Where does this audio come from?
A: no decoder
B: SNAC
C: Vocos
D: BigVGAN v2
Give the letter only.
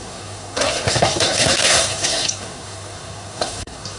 B